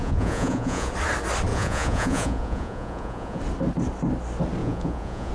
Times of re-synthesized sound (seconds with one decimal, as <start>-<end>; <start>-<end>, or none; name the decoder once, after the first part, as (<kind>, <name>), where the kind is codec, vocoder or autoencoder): 0.0-0.9 (vocoder, Vocos); 1.5-3.4; 4.6-5.3